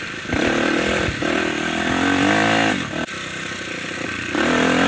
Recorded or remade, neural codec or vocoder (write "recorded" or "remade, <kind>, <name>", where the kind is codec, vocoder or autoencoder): recorded